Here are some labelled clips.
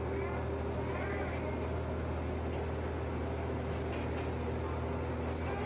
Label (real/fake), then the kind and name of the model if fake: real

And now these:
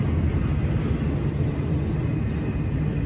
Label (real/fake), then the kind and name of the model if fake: real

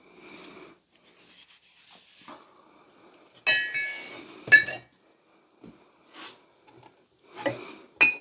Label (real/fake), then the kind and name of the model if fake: real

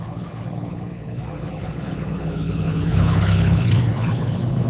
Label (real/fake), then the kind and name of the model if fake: fake, codec, HILCodec